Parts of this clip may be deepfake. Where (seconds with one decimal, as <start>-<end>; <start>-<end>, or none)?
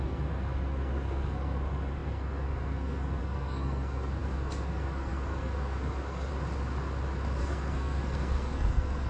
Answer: 0.0-6.3; 7.4-9.1